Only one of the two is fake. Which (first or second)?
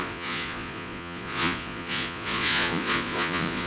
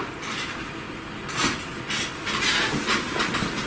first